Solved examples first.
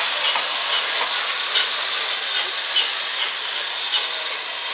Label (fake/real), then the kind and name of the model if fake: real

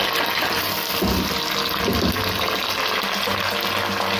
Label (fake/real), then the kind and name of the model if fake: real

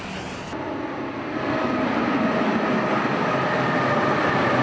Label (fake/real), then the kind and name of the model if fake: real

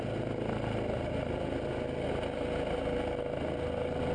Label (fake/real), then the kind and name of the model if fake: real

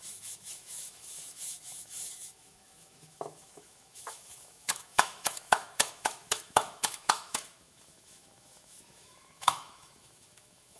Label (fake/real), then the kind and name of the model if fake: fake, autoencoder, DAC-VAE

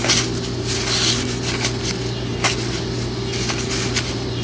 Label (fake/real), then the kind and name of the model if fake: real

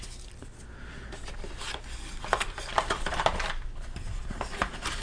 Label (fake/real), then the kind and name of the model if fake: real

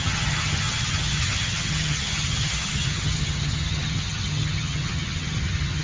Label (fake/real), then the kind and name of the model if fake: fake, vocoder, HiFi-GAN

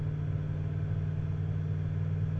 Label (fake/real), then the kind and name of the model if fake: real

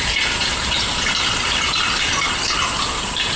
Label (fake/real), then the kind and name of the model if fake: fake, vocoder, BigVGAN v2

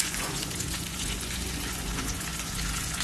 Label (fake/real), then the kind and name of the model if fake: fake, vocoder, Vocos